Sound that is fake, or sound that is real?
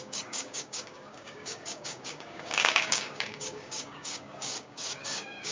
fake